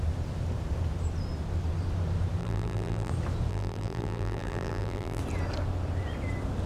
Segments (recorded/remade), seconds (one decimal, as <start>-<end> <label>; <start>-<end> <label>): 0.0-2.4 recorded; 2.4-3.1 remade; 3.1-3.5 recorded; 3.5-5.2 remade; 5.2-6.7 recorded